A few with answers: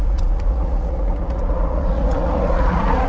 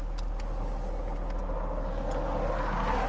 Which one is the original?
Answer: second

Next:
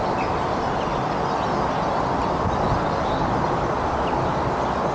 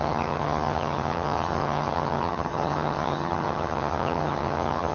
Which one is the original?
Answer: first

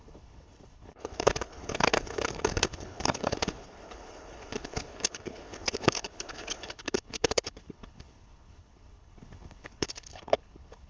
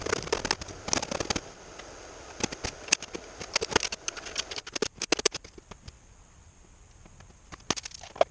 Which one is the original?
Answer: second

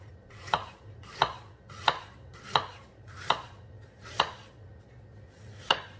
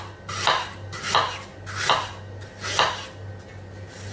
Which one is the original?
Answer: second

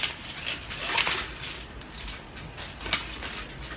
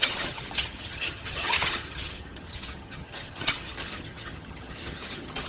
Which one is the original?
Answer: first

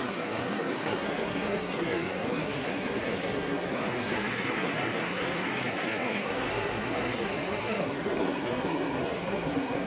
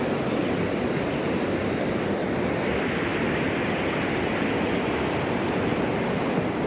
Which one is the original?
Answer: second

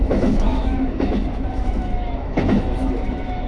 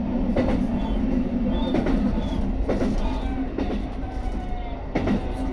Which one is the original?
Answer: second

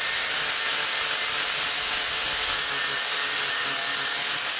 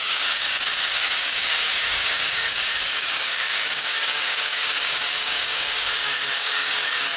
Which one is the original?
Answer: first